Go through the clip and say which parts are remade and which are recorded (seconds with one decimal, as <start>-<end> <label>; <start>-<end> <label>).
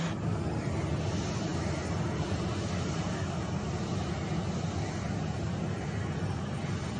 0.0-7.0 recorded